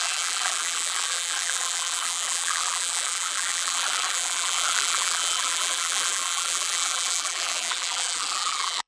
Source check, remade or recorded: remade